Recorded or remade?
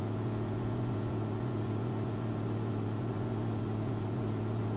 remade